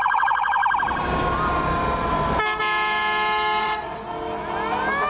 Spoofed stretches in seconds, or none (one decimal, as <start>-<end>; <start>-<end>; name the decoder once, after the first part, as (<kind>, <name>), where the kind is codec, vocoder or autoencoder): 0.0-0.6 (vocoder, WaveNeXt); 3.6-4.0